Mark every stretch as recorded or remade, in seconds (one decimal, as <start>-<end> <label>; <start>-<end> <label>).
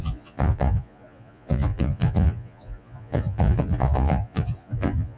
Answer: 0.0-5.2 remade